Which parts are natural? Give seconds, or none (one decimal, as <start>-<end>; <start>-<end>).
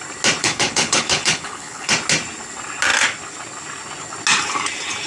0.0-0.4; 1.9-5.1